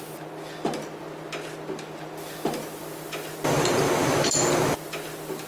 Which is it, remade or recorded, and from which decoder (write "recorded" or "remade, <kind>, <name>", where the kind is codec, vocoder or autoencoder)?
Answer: recorded